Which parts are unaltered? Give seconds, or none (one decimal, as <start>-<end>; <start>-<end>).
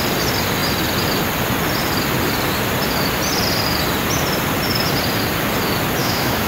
0.0-6.0